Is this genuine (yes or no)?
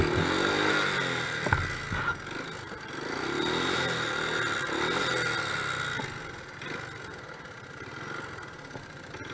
yes